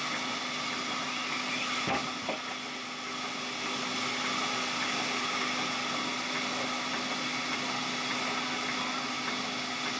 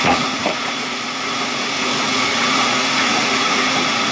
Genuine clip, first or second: first